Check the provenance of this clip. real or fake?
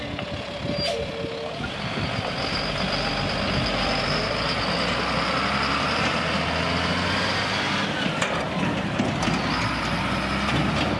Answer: real